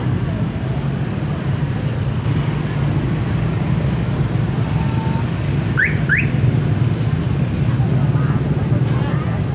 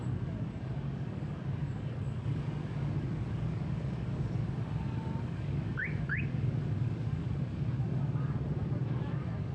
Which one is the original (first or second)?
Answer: first